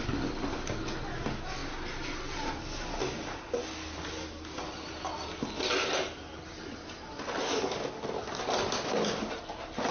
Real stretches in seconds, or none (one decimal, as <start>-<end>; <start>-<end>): 0.0-9.9